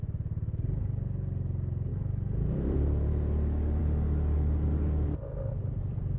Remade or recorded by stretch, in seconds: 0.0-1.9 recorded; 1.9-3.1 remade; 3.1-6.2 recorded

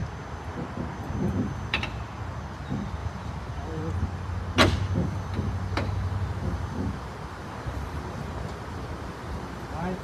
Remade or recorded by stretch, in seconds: 0.0-3.0 recorded; 3.0-3.9 remade; 3.9-10.0 recorded

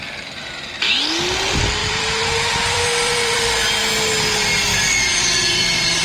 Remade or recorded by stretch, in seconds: 0.0-1.8 recorded; 1.8-3.5 remade; 3.5-4.7 recorded; 4.7-6.0 remade

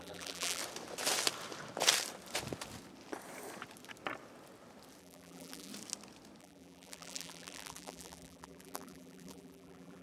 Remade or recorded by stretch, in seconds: 0.0-0.6 remade; 0.6-5.0 recorded; 5.0-5.7 remade; 5.7-6.4 recorded; 6.4-10.0 remade

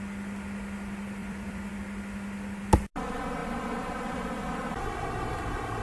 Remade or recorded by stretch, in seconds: 0.0-1.2 recorded; 1.2-1.7 remade; 1.7-3.4 recorded; 3.4-5.8 remade

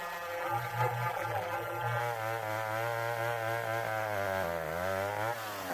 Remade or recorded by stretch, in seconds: 0.0-2.0 remade; 2.0-5.7 recorded